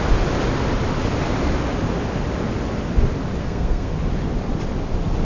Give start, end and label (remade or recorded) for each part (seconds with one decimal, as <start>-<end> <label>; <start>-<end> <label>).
0.0-3.4 recorded; 3.4-4.0 remade; 4.0-5.2 recorded